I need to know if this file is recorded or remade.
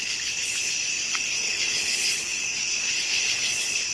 remade